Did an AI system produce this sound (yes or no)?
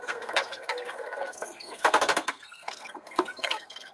yes